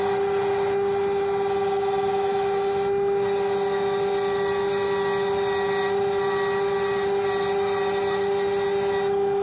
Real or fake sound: real